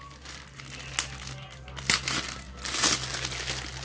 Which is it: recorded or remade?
recorded